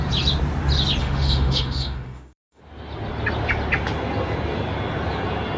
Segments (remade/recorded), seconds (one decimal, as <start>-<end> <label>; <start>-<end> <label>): 0.0-1.0 recorded; 1.0-2.6 remade; 2.6-5.6 recorded